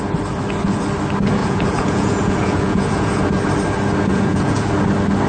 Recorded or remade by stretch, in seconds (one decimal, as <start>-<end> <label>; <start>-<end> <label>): 0.0-1.4 recorded; 1.4-3.3 remade; 3.3-4.1 recorded; 4.1-4.7 remade; 4.7-5.3 recorded